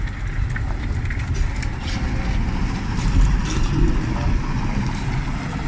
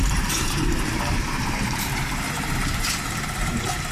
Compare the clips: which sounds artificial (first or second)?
second